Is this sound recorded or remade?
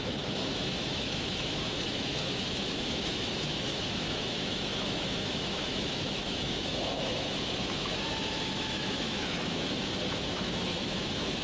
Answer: remade